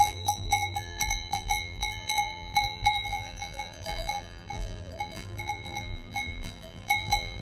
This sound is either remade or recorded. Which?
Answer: remade